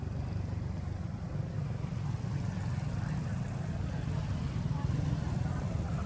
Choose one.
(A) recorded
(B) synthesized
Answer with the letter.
A